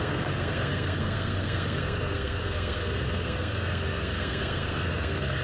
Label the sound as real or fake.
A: fake